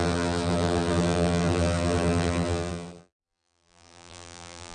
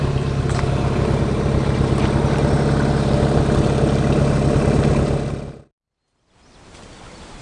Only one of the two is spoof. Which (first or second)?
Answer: first